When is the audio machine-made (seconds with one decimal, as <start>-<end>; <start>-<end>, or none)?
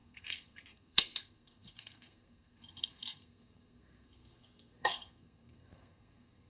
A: 0.0-6.5